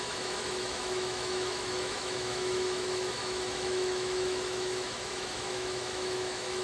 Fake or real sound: fake